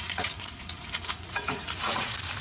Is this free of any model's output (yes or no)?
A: no